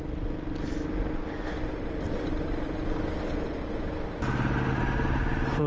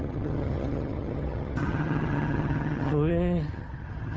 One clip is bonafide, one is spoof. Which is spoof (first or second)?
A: second